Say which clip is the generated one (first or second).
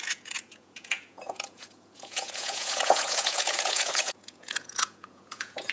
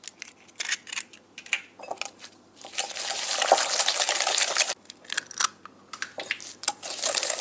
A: first